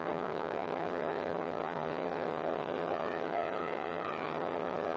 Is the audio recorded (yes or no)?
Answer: no